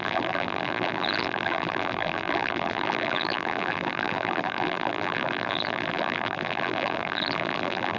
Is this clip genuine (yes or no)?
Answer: no